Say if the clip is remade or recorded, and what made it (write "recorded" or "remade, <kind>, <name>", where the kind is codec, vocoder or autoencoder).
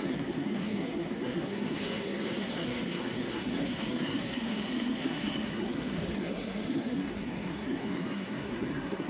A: remade, codec, SNAC